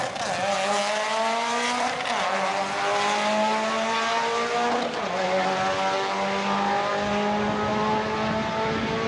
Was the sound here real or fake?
real